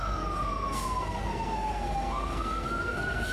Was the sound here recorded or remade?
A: remade